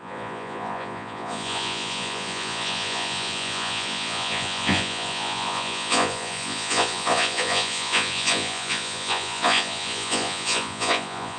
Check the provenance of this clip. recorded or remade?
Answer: remade